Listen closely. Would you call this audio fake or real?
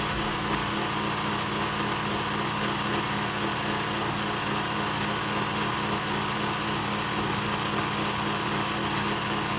real